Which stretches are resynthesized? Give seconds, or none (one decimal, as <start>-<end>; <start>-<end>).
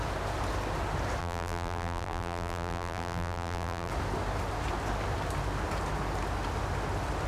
1.2-3.9